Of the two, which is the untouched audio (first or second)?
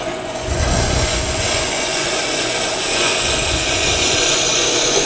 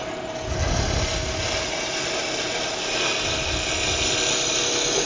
second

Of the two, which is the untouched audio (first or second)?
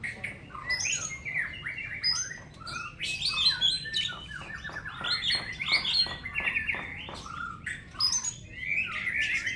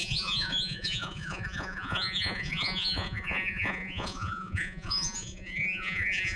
first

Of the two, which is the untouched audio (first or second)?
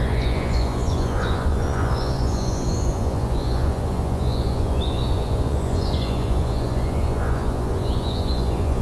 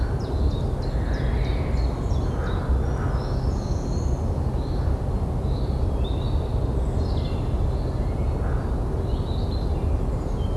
second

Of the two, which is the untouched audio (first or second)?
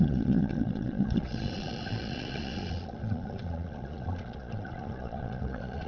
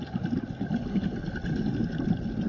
second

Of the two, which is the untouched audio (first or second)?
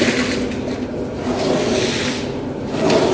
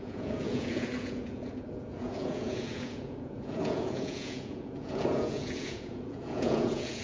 first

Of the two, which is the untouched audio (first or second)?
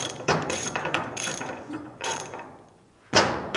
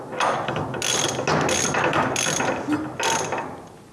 second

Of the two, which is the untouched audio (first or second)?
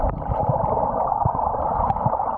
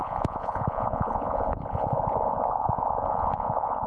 first